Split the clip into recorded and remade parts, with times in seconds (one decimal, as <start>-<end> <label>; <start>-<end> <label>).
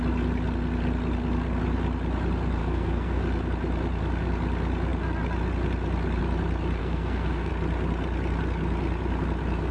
0.0-2.6 recorded; 2.6-3.2 remade; 3.2-6.8 recorded; 6.8-7.5 remade; 7.5-9.7 recorded